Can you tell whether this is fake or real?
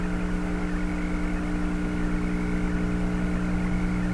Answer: real